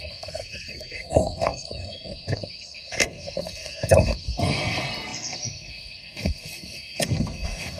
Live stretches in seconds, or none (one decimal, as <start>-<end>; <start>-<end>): none